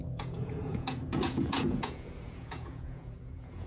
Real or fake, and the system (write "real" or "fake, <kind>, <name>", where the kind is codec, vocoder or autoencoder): fake, vocoder, Vocos